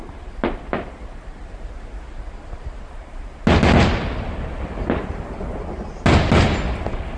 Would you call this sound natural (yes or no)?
yes